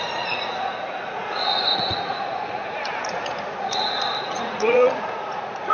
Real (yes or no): no